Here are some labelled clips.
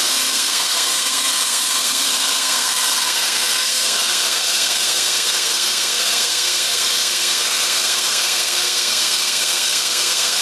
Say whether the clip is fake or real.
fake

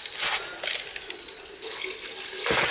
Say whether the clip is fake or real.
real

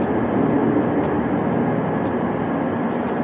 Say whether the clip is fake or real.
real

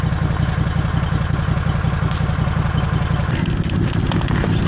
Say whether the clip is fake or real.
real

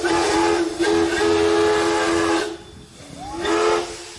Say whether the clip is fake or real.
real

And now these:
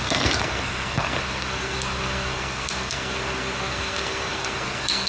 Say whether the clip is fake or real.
fake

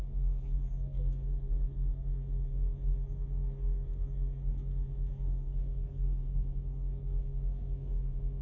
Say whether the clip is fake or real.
fake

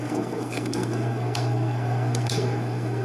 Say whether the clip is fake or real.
fake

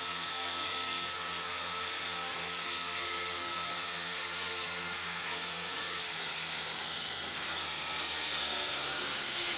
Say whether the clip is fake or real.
fake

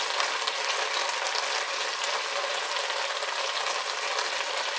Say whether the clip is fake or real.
real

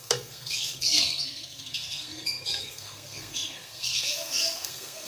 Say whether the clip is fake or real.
fake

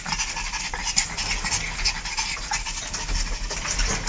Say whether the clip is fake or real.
real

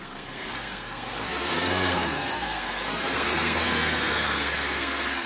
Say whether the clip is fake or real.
fake